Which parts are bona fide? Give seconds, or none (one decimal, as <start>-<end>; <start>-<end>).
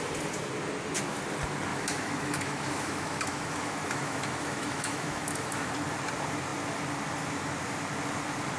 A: 0.0-1.7; 5.7-8.6